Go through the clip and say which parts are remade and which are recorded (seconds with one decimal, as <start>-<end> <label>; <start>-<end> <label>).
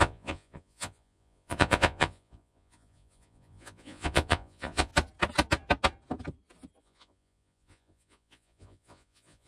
0.0-4.9 remade; 4.9-6.8 recorded; 6.8-9.5 remade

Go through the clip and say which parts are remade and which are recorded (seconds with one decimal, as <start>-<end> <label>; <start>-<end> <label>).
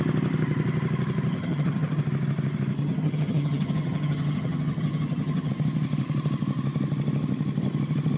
0.0-1.3 recorded; 1.3-2.0 remade; 2.0-2.8 recorded; 2.8-5.5 remade; 5.5-8.2 recorded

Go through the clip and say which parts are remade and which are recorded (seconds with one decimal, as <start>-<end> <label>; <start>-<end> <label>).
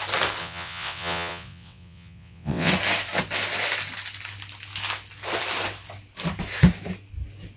0.0-0.4 recorded; 0.4-2.7 remade; 2.7-7.6 recorded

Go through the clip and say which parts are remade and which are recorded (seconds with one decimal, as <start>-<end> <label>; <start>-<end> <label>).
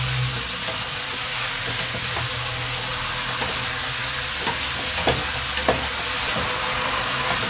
0.0-7.5 recorded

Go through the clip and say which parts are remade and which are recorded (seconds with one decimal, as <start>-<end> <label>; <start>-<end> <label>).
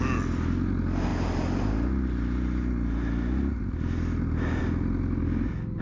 0.0-5.8 recorded